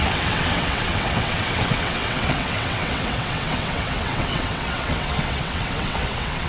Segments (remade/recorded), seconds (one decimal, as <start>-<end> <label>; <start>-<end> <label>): 0.0-6.5 remade